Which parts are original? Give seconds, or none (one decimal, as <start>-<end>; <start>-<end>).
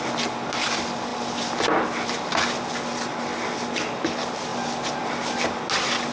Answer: 0.0-6.1